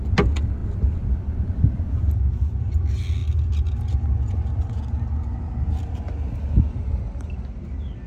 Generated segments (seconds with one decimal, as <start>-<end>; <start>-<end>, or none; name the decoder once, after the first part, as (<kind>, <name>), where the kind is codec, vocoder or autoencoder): none